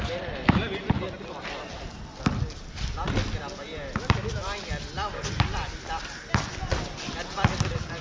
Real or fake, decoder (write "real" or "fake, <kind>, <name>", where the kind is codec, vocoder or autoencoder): real